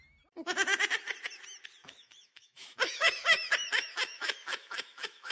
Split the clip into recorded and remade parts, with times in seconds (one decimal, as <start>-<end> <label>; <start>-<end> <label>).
0.0-1.8 recorded; 1.8-5.3 remade